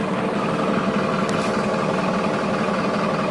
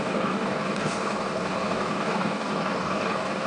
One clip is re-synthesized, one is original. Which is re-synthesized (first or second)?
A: second